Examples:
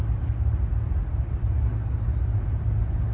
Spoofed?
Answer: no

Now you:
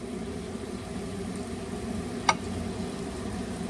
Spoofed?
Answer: no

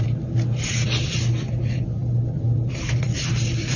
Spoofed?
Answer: yes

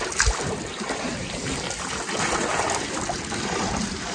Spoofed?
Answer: no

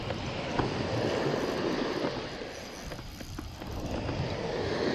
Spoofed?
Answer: no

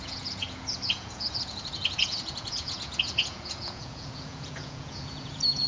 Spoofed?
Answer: yes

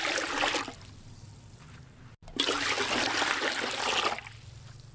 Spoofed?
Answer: no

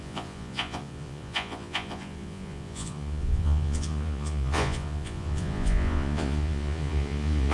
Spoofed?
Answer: yes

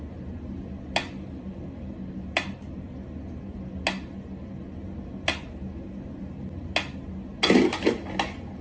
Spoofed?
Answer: no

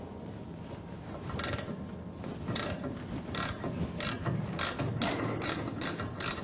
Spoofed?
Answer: no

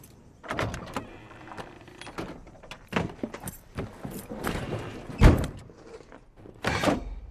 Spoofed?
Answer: yes